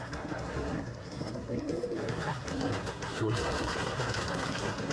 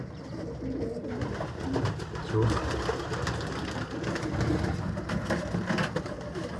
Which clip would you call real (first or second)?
second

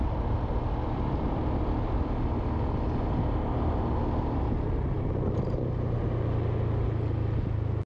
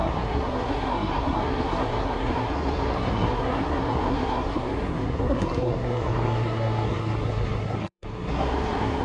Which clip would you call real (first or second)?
first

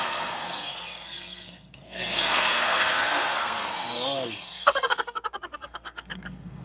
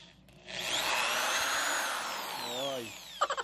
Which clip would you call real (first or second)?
second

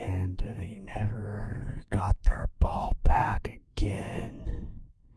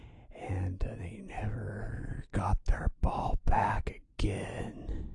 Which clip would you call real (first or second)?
second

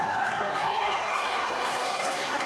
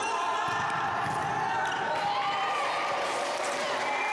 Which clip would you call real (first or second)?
second